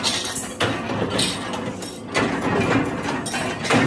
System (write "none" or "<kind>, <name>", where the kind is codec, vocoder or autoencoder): none